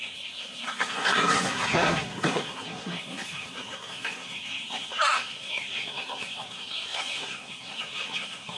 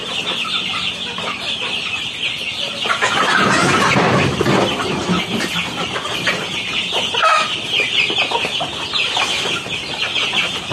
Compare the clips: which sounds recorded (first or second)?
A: second